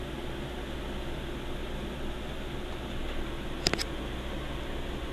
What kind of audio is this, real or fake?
real